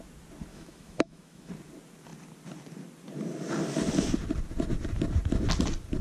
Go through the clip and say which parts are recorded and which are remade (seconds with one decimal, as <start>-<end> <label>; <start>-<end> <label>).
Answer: 0.0-0.5 recorded; 0.5-1.5 remade; 1.5-6.0 recorded